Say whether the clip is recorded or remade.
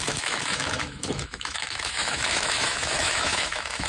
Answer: remade